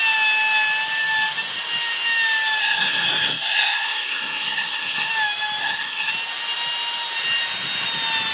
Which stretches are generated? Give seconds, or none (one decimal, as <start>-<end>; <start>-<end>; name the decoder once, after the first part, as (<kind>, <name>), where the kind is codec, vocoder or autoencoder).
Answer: 2.6-5.1 (codec, SNAC); 5.6-6.1

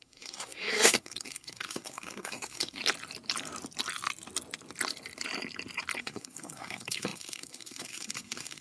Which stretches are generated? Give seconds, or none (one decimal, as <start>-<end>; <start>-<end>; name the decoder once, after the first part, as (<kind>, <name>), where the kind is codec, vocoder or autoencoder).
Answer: 0.0-2.8 (codec, SNAC); 6.0-8.6

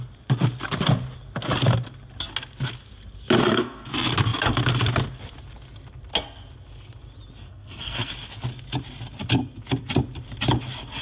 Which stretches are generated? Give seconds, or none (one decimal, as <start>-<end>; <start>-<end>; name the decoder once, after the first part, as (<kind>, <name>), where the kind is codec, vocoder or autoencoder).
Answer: 3.4-3.9 (codec, SNAC); 7.5-8.1

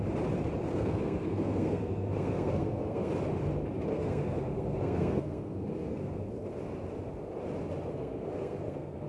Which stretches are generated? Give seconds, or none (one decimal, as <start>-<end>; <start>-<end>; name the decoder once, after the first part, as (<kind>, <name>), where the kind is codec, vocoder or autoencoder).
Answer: 0.7-3.1 (codec, SNAC); 3.9-6.3; 7.9-9.1

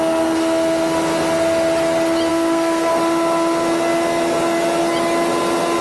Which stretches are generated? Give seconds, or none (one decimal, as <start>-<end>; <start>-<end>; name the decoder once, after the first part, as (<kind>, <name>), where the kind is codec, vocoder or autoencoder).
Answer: 2.3-2.9 (codec, SNAC)

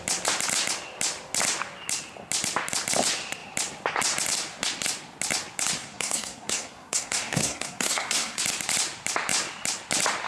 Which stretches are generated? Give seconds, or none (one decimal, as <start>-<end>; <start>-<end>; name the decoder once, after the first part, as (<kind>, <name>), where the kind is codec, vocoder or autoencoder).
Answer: 5.8-8.4 (codec, SNAC)